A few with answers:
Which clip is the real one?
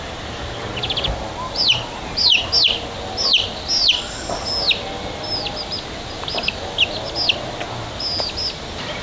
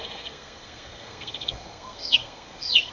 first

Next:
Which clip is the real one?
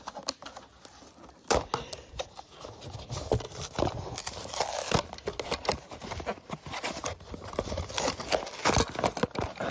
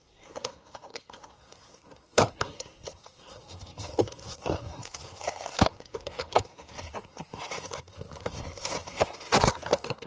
first